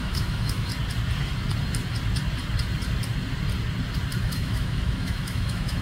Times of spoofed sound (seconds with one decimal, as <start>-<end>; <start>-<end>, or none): 0.0-0.7; 4.2-5.8